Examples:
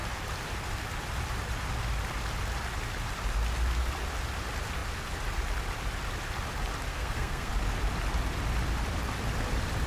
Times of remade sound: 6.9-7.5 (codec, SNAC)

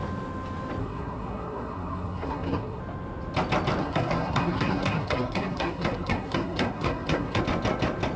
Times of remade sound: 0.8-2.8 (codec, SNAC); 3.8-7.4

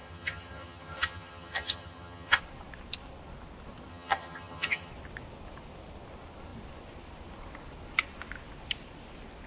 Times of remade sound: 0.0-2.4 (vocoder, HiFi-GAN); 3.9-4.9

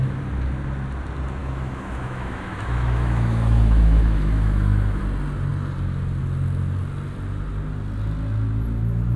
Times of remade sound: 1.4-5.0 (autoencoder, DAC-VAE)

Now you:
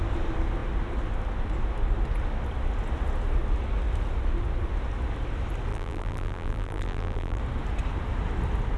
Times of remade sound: 5.7-7.4 (vocoder, BigVGAN v2)

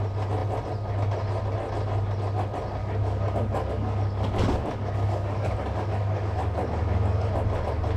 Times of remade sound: 2.8-7.3 (codec, DAC)